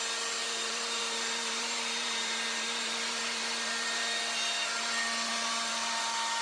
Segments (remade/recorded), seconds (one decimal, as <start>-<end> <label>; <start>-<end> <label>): 0.0-0.4 recorded; 0.4-4.2 remade; 4.2-5.3 recorded; 5.3-6.0 remade; 6.0-6.4 recorded